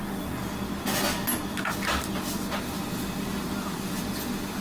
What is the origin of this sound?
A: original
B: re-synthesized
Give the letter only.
A